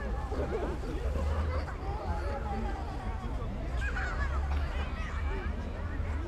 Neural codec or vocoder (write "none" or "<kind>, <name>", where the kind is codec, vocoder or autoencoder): none